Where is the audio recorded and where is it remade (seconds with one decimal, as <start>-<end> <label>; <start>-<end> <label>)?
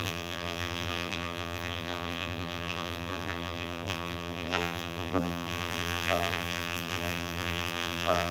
0.0-8.3 remade